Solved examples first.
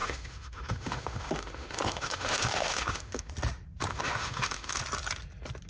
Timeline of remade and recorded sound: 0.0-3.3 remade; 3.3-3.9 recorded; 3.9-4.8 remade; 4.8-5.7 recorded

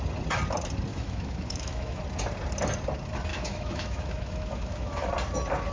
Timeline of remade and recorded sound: 0.0-0.9 recorded; 0.9-2.0 remade; 2.0-3.3 recorded; 3.3-5.1 remade; 5.1-5.7 recorded

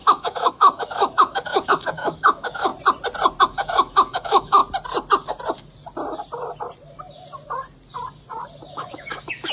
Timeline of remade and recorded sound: 0.0-2.7 remade; 2.7-3.4 recorded; 3.4-4.6 remade; 4.6-8.7 recorded; 8.7-9.5 remade

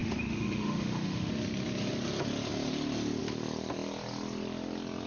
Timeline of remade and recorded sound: 0.0-1.3 remade; 1.3-5.1 recorded

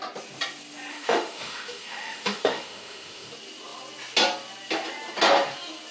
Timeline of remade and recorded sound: 0.0-0.9 recorded; 0.9-3.3 remade; 3.3-5.9 recorded